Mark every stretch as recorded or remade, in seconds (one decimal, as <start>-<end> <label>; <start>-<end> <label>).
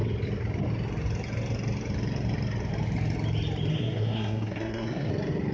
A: 0.0-3.7 recorded; 3.7-5.1 remade; 5.1-5.5 recorded